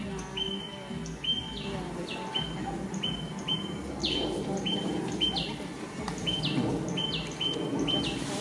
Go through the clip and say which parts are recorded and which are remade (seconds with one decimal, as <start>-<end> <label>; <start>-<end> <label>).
0.0-4.0 recorded; 4.0-5.0 remade; 5.0-5.7 recorded; 5.7-6.4 remade; 6.4-8.4 recorded